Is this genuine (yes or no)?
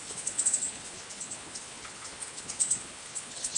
no